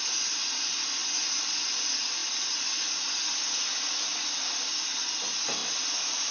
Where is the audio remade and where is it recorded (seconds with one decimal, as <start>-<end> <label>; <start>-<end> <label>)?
0.0-6.3 recorded